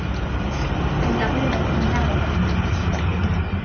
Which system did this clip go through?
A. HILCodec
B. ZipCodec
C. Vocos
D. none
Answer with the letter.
D